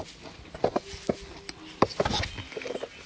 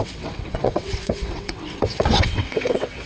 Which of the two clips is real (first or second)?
first